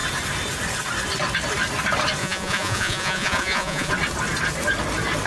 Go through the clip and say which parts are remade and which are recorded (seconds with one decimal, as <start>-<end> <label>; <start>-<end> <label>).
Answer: 0.0-2.2 recorded; 2.2-3.9 remade; 3.9-5.3 recorded